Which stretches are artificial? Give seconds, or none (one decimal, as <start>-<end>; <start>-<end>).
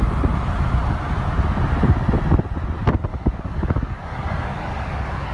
3.1-5.3